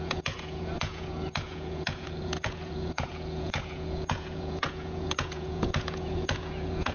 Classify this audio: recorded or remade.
remade